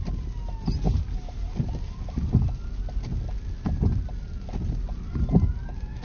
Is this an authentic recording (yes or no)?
yes